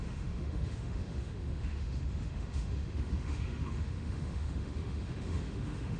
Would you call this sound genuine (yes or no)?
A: no